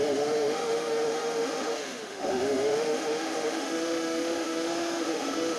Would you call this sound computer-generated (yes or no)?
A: yes